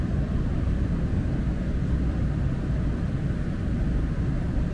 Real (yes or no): yes